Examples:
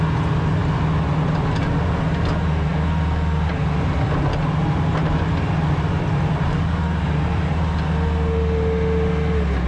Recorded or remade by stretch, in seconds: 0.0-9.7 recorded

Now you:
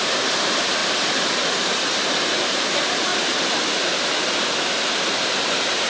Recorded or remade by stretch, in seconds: 0.0-3.1 remade; 3.1-5.5 recorded; 5.5-5.9 remade

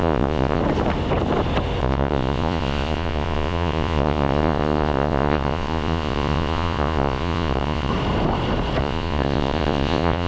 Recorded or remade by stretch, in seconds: 0.0-0.6 remade; 0.6-1.8 recorded; 1.8-7.9 remade; 7.9-8.8 recorded; 8.8-10.3 remade

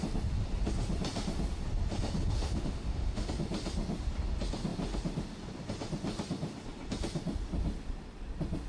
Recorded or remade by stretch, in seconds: 0.0-2.2 recorded; 2.2-3.3 remade; 3.3-8.7 recorded

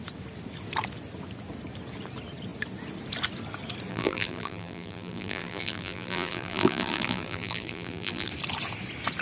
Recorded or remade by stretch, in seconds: 0.0-3.9 recorded; 3.9-8.3 remade; 8.3-9.2 recorded